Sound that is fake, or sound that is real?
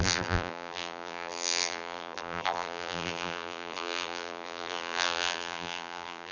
fake